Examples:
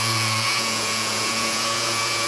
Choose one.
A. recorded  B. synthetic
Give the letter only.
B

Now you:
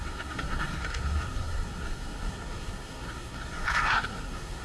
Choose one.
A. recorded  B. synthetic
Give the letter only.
B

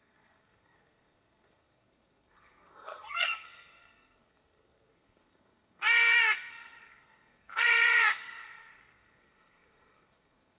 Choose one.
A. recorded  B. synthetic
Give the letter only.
B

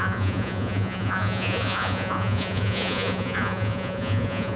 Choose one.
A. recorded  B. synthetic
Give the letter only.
B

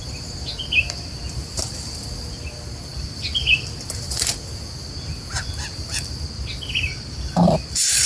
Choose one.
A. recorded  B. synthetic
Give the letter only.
A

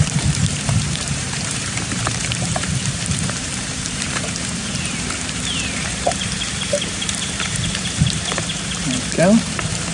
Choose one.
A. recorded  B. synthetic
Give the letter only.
B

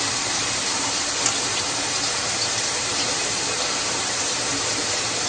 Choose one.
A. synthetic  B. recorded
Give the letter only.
A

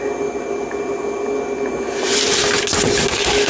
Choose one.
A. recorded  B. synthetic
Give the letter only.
A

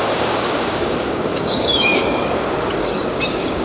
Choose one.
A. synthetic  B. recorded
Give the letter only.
A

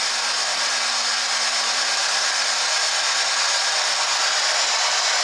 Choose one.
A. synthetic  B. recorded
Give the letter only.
A